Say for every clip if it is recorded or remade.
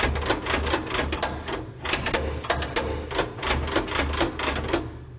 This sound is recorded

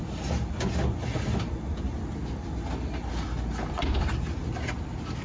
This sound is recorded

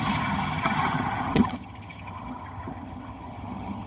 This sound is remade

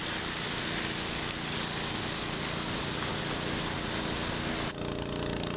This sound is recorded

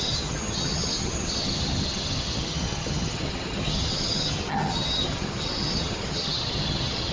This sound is remade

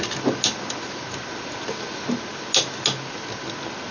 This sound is recorded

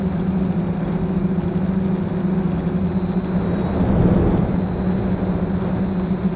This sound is recorded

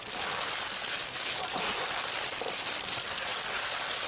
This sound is recorded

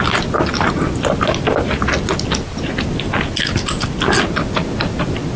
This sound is recorded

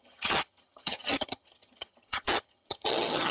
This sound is remade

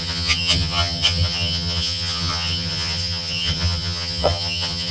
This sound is remade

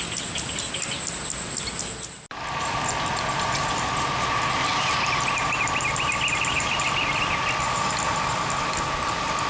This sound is recorded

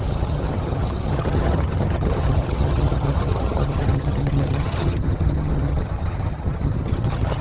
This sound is remade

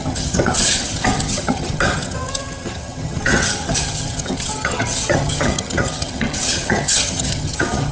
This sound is remade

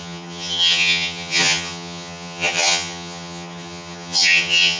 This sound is remade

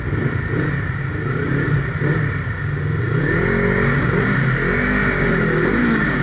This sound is recorded